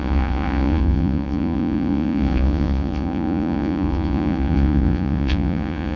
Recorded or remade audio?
remade